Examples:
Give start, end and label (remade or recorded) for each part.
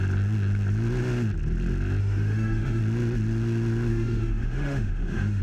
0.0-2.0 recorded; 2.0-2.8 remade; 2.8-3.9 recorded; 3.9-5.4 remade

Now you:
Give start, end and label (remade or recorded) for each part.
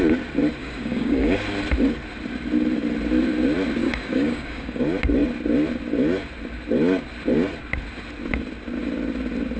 0.0-0.6 recorded; 0.6-1.4 remade; 1.4-3.8 recorded; 3.8-4.8 remade; 4.8-9.6 recorded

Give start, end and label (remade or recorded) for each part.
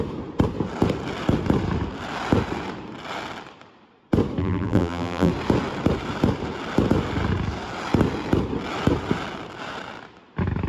0.0-4.4 recorded; 4.4-5.3 remade; 5.3-10.7 recorded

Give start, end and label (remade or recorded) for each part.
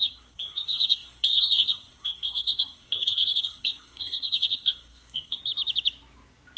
0.0-5.4 remade; 5.4-6.6 recorded